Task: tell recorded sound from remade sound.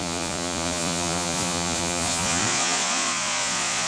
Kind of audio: remade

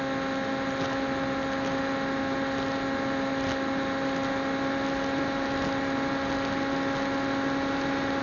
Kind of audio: recorded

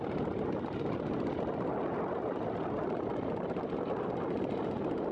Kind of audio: recorded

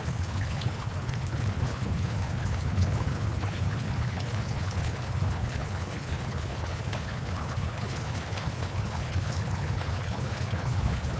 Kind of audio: remade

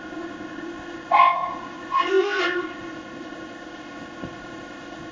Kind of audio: remade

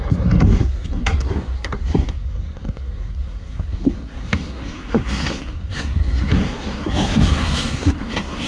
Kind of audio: remade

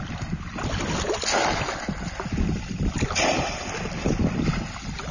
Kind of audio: recorded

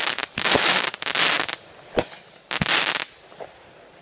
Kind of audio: recorded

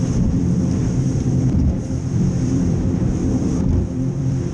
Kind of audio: remade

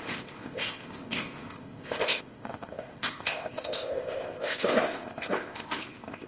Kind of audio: remade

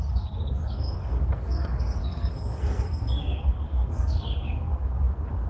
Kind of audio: remade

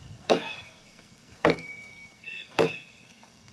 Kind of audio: remade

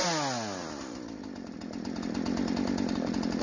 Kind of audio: recorded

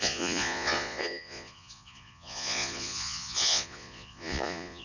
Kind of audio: remade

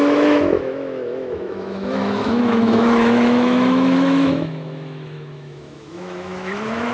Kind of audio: remade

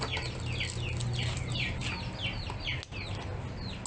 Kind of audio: recorded